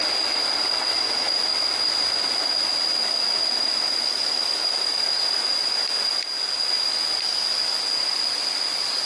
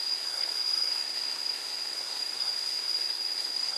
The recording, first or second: first